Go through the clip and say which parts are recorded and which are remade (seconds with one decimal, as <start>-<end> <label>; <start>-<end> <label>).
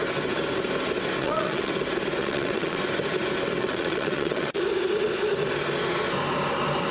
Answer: 0.0-1.2 recorded; 1.2-1.7 remade; 1.7-2.2 recorded; 2.2-2.8 remade; 2.8-3.6 recorded; 3.6-4.6 remade; 4.6-6.9 recorded